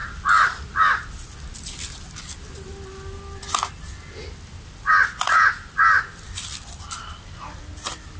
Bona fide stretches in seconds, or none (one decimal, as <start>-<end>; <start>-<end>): 0.0-8.2